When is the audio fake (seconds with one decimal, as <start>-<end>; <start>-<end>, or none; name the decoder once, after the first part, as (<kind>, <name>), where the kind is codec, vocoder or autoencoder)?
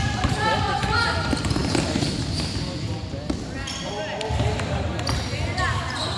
none